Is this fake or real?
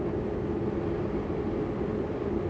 real